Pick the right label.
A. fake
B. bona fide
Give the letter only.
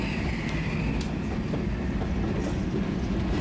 B